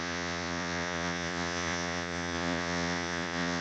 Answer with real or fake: fake